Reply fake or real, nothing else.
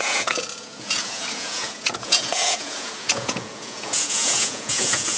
fake